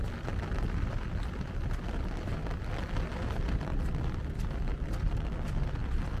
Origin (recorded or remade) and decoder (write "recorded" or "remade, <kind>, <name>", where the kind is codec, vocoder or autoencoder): recorded